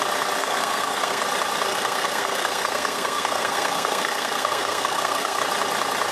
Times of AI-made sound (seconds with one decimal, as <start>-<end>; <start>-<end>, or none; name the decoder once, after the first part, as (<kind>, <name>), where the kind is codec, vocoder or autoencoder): 0.4-1.2 (codec, SNAC); 1.7-5.4